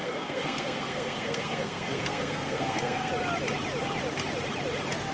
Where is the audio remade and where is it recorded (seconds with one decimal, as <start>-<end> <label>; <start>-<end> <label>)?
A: 0.0-3.1 remade; 3.1-5.1 recorded